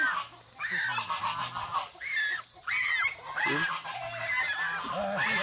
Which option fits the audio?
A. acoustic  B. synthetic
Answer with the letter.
A